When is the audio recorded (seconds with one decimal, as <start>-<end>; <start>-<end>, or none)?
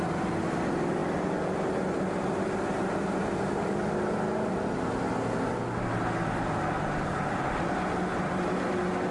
0.0-9.1